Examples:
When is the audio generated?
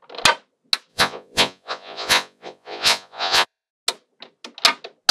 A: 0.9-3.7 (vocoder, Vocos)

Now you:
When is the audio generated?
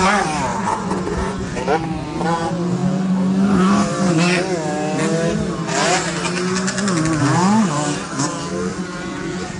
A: 0.5-1.6 (vocoder, Vocos); 8.7-9.6